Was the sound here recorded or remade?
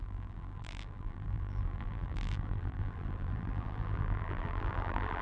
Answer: remade